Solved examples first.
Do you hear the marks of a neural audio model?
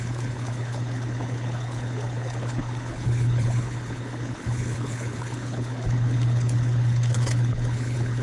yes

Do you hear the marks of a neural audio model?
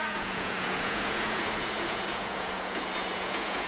yes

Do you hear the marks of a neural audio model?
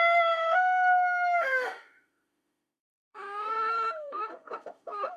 yes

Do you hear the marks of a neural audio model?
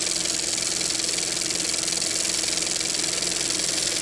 no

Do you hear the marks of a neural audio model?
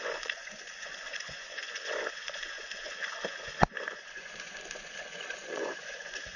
yes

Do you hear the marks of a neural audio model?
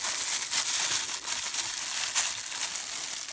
no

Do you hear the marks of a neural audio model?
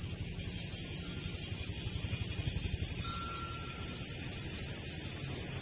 no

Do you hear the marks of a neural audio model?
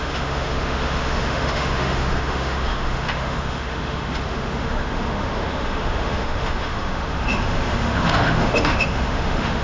yes